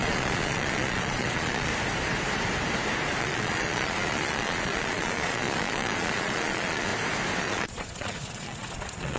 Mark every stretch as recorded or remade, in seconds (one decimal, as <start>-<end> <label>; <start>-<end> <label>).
0.0-1.7 remade; 1.7-3.2 recorded; 3.2-6.9 remade; 6.9-7.4 recorded; 7.4-9.2 remade